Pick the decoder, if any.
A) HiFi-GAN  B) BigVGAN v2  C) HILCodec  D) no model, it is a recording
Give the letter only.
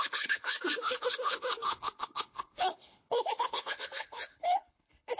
C